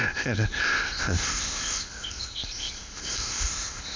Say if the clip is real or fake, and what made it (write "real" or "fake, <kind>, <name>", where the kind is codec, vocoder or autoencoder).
fake, codec, ZipCodec